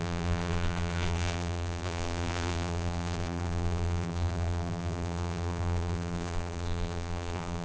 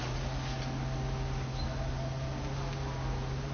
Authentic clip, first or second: second